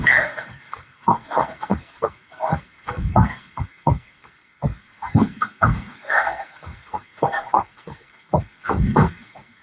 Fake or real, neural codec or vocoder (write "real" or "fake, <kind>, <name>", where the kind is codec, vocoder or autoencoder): fake, codec, SNAC